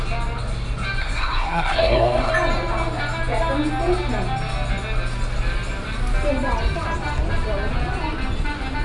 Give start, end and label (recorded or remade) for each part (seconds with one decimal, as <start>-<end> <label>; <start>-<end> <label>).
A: 0.0-1.0 recorded; 1.0-2.3 remade; 2.3-8.8 recorded